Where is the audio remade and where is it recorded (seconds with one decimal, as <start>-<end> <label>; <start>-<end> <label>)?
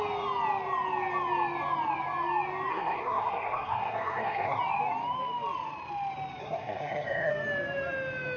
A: 0.0-2.7 recorded; 2.7-4.6 remade; 4.6-6.4 recorded; 6.4-7.3 remade; 7.3-8.4 recorded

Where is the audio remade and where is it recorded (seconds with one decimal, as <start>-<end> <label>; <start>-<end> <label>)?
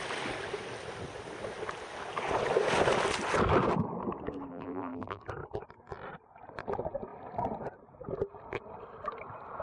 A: 0.0-4.5 recorded; 4.5-5.2 remade; 5.2-9.6 recorded